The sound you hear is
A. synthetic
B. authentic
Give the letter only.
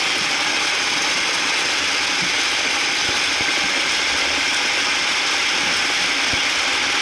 B